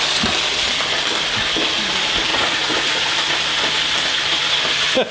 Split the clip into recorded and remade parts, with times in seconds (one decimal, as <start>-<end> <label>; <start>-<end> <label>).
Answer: 0.0-2.3 recorded; 2.3-3.1 remade; 3.1-5.1 recorded